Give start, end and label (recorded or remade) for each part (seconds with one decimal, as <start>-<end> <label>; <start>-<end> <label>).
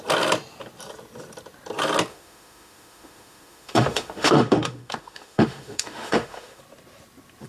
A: 0.0-2.1 recorded; 2.1-6.6 remade; 6.6-7.5 recorded